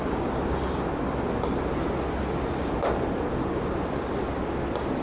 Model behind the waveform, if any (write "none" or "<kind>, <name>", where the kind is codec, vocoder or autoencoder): none